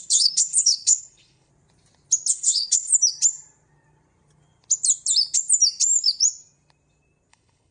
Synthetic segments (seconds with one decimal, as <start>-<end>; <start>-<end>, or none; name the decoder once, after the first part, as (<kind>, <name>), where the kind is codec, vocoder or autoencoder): 0.0-1.5 (codec, HILCodec); 2.3-2.9; 7.3-7.7